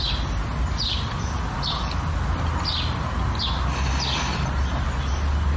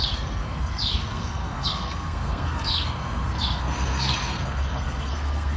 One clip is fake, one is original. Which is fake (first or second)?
second